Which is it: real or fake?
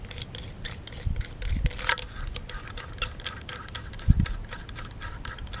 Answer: real